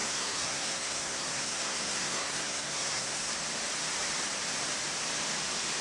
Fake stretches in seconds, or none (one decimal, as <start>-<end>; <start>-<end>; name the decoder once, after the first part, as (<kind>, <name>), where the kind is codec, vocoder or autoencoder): 0.0-3.3 (codec, SNAC)